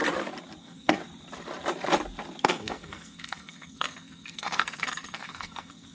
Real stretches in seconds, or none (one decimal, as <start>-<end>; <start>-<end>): 0.0-0.6; 1.0-2.4